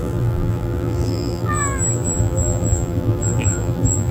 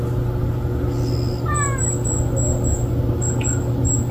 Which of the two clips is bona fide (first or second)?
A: second